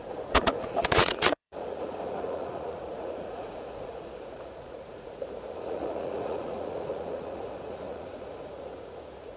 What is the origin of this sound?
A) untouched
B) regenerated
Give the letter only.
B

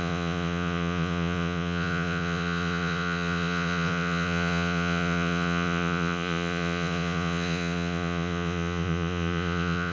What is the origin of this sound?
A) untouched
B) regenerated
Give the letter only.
B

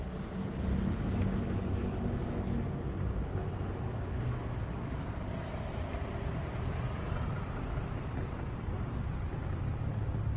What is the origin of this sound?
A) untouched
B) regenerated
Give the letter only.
A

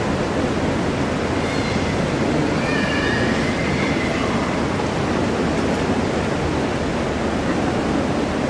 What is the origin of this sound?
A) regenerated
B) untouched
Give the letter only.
B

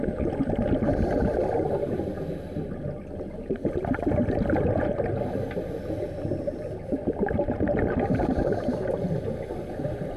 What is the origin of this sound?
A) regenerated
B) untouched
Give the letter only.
B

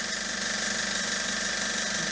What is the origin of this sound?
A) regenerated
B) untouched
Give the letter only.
B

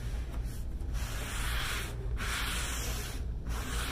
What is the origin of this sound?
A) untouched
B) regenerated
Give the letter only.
A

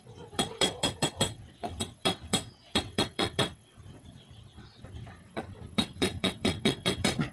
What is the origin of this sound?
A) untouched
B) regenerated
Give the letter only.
B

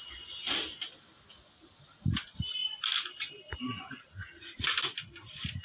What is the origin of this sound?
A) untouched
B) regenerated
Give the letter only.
A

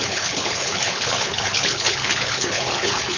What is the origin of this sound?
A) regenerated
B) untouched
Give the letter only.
A